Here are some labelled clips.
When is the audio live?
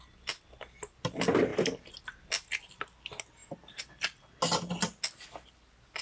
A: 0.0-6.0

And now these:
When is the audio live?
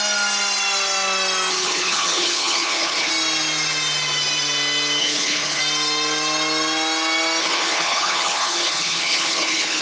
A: 0.0-1.5; 3.1-5.0; 5.6-7.4